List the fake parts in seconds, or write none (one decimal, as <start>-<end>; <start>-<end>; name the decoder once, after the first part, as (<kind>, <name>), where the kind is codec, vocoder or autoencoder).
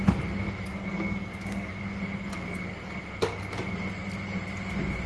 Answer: 0.7-1.8 (codec, SNAC)